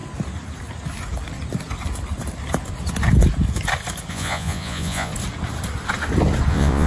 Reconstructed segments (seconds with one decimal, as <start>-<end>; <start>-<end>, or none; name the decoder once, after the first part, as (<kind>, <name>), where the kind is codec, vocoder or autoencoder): 4.1-5.1 (vocoder, Vocos); 6.5-6.9